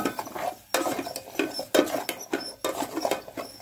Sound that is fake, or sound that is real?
real